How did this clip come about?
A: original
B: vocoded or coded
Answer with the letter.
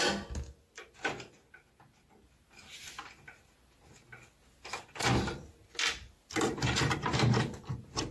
A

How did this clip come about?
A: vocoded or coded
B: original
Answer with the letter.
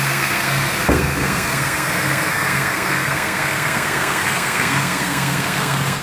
A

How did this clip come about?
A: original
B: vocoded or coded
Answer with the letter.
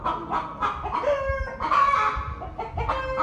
A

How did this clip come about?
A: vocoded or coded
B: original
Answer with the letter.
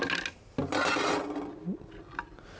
B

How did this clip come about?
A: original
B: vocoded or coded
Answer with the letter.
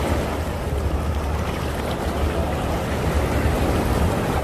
A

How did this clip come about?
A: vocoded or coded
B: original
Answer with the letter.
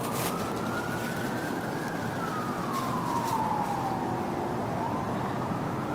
B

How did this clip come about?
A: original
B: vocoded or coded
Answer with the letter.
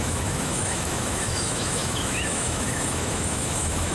B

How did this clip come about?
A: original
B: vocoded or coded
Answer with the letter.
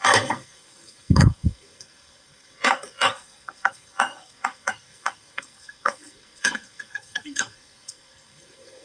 B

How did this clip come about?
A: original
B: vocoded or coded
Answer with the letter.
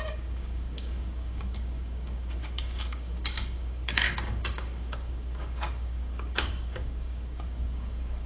B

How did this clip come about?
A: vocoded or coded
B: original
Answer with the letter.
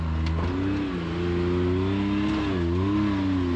B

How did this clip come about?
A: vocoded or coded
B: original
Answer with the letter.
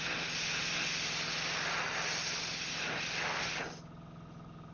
B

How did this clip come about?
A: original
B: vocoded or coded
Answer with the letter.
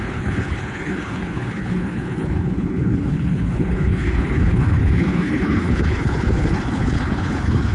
B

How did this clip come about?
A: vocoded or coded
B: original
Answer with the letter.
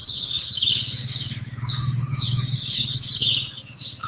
A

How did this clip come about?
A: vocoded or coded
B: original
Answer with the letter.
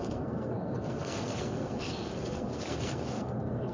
A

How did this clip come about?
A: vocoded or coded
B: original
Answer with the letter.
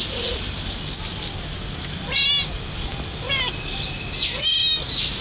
B